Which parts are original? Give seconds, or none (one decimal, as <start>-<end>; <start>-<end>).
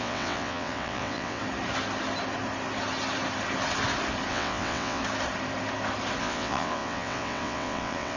1.4-4.3; 5.0-6.2